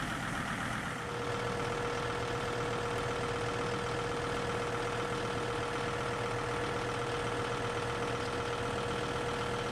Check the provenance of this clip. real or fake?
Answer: real